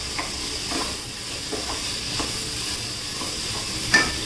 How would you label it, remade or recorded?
recorded